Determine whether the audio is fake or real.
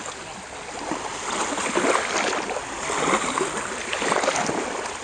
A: real